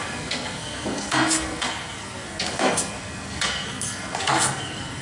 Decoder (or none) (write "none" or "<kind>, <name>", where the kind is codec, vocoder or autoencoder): codec, SNAC